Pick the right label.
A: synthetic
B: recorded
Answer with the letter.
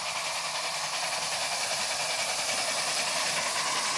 B